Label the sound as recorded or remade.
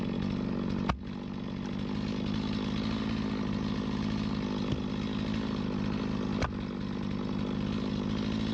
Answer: recorded